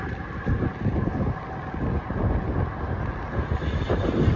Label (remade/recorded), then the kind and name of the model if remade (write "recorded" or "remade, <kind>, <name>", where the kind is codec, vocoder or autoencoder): recorded